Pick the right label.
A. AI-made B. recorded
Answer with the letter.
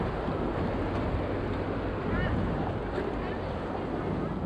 B